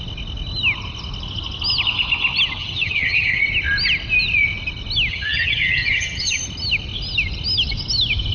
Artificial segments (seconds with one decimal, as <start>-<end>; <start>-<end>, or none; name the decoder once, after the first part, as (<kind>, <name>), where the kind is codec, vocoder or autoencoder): 2.6-3.4 (vocoder, HiFi-GAN); 5.1-6.4